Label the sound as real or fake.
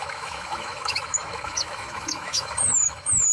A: fake